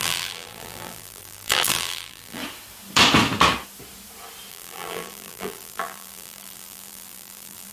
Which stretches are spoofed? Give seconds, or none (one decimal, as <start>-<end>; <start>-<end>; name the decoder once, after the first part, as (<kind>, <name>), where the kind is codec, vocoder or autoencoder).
0.0-2.4 (vocoder, BigVGAN v2); 4.5-7.7